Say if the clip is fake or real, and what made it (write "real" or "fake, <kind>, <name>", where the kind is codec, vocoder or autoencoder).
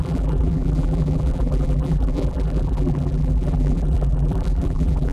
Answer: fake, vocoder, BigVGAN v2